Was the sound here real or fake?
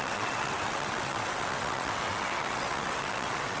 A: fake